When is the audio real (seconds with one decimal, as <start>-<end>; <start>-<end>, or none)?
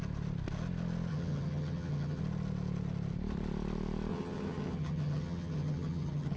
0.0-1.1; 2.2-4.1